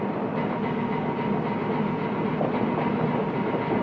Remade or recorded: recorded